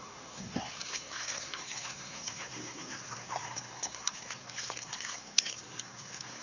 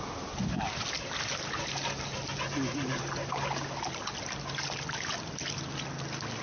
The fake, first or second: first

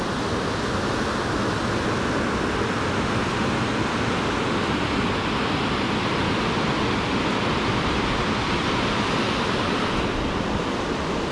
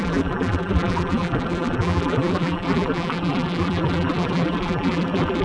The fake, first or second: second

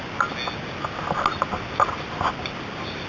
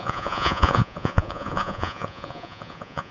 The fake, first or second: second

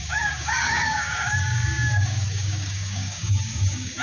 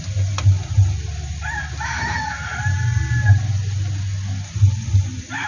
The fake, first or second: first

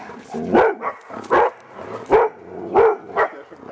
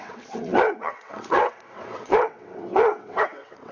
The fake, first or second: second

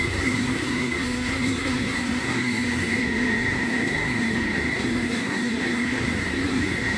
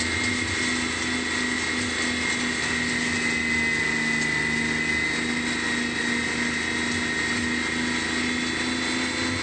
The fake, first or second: first